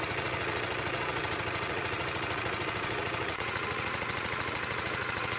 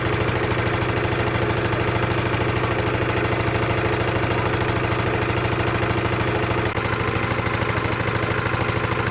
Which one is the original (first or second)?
second